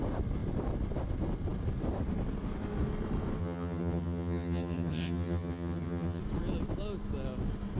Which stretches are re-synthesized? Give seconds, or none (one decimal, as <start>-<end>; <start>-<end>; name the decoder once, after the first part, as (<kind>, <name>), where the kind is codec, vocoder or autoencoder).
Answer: 3.4-6.2 (vocoder, HiFi-GAN)